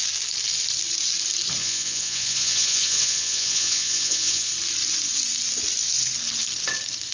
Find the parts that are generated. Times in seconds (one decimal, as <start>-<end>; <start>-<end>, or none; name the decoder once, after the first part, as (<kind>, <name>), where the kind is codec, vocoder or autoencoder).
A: 1.6-4.5 (vocoder, Vocos)